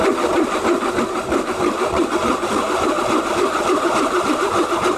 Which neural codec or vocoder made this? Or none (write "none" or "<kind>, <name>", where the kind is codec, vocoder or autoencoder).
vocoder, BigVGAN v2